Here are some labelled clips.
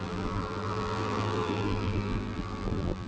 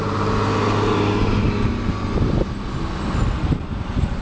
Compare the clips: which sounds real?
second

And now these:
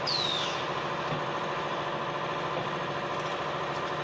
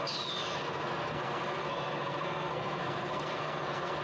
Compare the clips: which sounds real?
first